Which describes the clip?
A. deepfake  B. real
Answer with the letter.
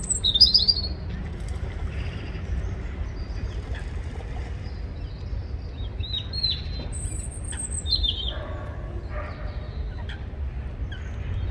B